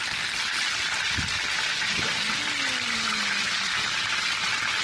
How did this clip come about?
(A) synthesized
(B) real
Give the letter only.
B